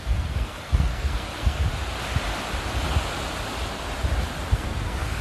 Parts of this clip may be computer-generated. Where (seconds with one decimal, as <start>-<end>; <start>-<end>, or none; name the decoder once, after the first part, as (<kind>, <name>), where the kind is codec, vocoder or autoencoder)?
0.0-1.7 (codec, SNAC); 4.5-5.2